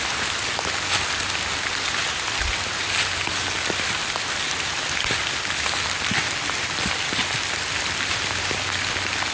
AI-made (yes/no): no